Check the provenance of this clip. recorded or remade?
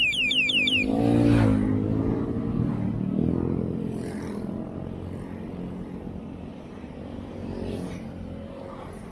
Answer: recorded